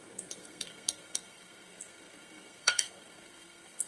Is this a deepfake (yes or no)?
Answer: yes